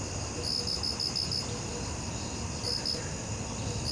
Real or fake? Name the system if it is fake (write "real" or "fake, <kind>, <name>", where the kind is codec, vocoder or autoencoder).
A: real